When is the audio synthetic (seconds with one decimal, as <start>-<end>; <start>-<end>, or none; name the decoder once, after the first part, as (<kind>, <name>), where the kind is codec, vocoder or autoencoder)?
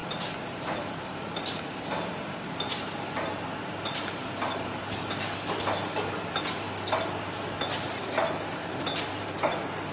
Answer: none